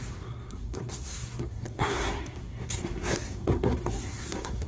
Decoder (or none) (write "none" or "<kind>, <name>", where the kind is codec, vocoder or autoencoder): codec, SNAC